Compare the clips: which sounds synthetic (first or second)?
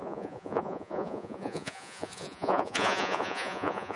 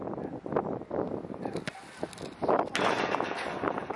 first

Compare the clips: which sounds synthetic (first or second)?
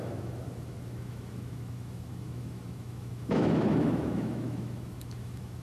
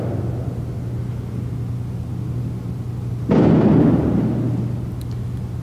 first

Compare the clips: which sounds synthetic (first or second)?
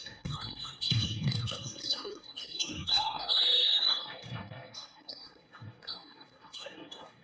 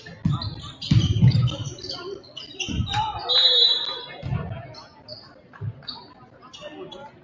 first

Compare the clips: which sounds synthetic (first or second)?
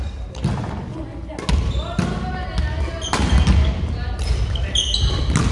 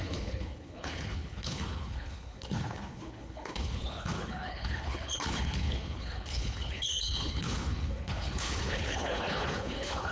second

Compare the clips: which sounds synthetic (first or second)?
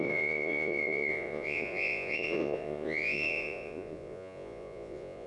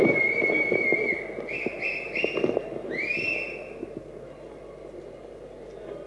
first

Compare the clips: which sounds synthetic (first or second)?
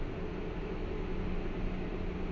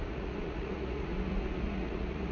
second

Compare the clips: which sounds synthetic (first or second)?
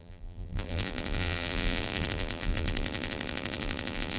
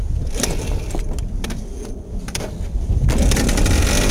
first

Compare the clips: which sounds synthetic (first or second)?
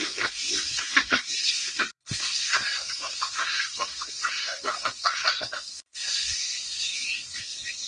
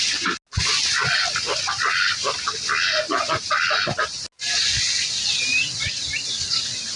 first